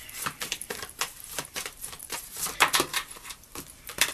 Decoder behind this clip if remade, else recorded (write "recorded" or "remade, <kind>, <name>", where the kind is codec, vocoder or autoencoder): remade, vocoder, BigVGAN v2